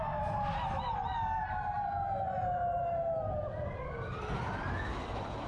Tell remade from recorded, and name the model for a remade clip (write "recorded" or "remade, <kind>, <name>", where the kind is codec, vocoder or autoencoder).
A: recorded